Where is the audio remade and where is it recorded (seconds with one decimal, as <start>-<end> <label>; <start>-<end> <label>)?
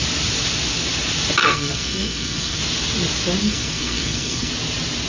0.0-1.4 recorded; 1.4-2.6 remade; 2.6-3.4 recorded; 3.4-4.5 remade; 4.5-5.1 recorded